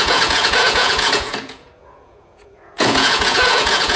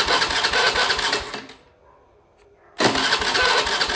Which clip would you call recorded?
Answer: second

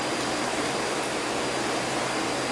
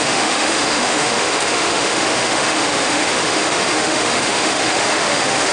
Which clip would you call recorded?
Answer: first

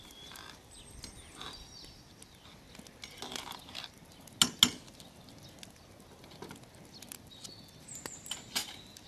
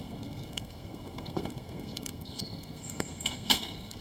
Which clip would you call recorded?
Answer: first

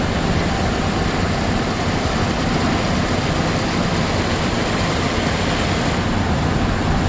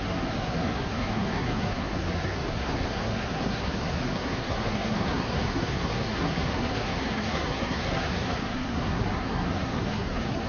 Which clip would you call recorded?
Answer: first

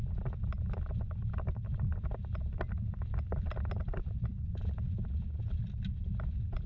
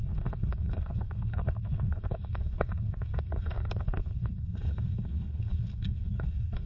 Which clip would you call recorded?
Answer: first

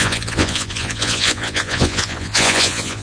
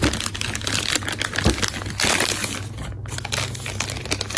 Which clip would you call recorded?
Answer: second